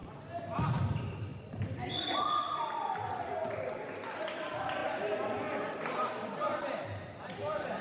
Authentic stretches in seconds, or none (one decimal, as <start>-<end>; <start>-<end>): 4.8-7.8